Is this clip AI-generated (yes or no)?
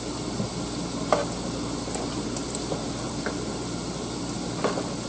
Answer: no